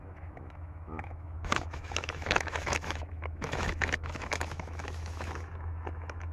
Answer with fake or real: fake